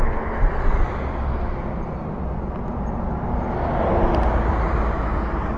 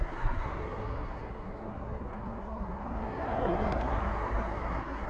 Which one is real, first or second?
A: first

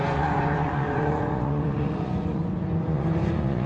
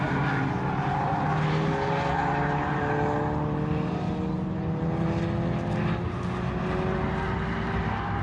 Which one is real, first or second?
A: second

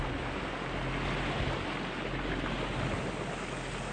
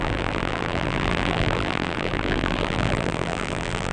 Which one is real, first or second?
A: first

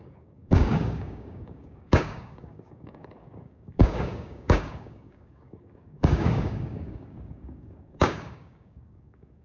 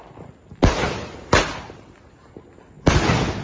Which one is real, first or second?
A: second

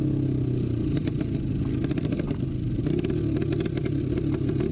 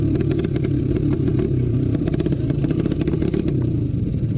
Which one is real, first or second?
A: first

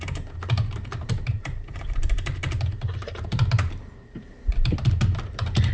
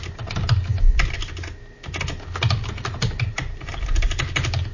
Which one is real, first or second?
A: second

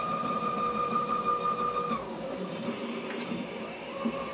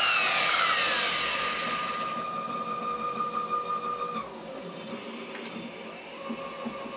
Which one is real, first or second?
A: second